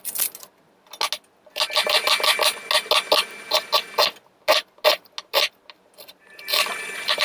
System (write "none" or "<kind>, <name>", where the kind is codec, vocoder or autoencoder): none